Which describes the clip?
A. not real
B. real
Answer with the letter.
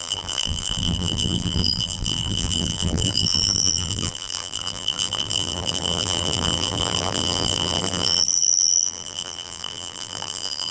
A